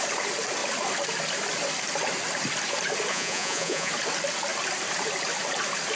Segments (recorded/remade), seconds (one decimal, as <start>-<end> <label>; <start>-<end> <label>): 0.0-3.1 recorded; 3.1-3.9 remade; 3.9-6.0 recorded